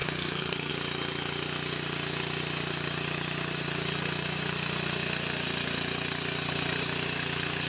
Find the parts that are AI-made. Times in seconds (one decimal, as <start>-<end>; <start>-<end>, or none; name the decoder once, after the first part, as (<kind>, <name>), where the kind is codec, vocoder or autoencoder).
0.0-0.7 (codec, SNAC)